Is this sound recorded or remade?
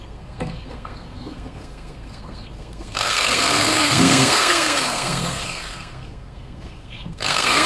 remade